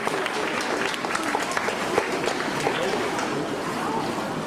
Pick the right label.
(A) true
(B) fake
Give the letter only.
A